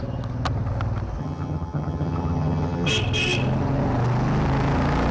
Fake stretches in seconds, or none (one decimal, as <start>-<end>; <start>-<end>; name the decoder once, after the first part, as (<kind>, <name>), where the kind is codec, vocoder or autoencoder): 1.2-2.9 (vocoder, HiFi-GAN)